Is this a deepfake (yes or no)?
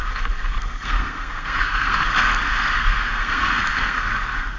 yes